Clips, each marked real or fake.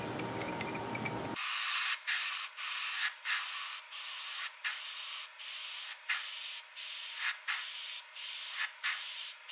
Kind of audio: real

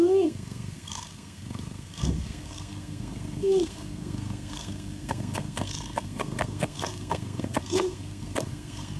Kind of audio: fake